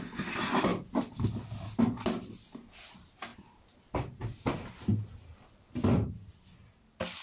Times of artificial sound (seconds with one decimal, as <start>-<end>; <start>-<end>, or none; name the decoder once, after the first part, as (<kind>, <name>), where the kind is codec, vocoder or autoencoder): 3.3-6.1 (vocoder, BigVGAN v2)